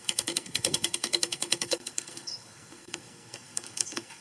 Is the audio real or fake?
fake